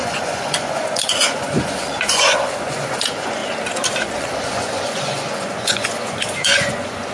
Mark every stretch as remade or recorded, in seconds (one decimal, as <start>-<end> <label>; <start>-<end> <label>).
0.0-3.4 remade; 3.4-4.0 recorded; 4.0-7.1 remade